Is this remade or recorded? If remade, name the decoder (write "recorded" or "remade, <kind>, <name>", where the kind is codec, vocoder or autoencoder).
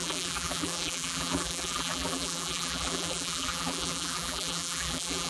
remade, vocoder, BigVGAN v2